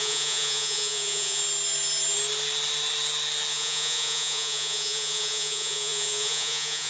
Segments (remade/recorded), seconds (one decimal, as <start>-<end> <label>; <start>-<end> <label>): 0.0-1.4 remade; 1.4-3.5 recorded; 3.5-6.9 remade